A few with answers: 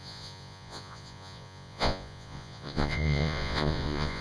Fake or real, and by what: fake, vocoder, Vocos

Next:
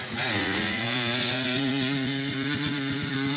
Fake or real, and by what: fake, vocoder, Vocos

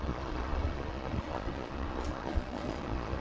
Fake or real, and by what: fake, vocoder, Vocos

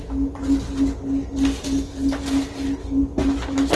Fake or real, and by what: real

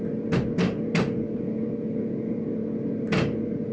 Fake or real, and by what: real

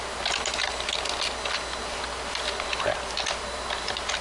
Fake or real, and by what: real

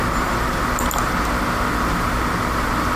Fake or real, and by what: real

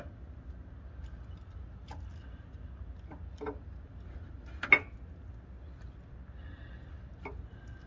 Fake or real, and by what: real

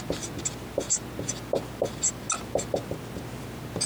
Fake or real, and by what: real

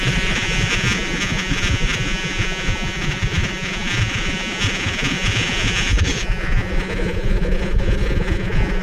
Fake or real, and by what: fake, vocoder, Vocos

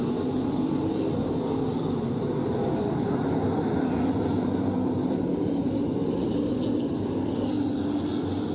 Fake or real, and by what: real